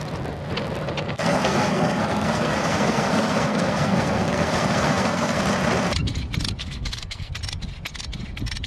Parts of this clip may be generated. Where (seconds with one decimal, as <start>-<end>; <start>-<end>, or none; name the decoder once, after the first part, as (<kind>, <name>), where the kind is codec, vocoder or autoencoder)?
1.0-5.4 (codec, SNAC); 6.6-7.3